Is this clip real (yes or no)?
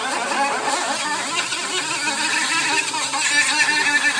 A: yes